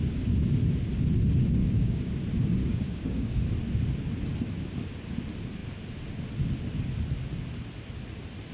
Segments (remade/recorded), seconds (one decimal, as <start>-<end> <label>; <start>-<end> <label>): 0.0-1.6 recorded; 1.6-2.1 remade; 2.1-2.6 recorded; 2.6-3.4 remade; 3.4-8.5 recorded